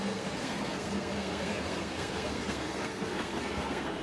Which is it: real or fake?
fake